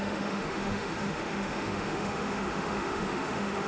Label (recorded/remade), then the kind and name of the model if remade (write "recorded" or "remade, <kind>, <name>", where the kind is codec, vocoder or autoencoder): remade, autoencoder, DAC-VAE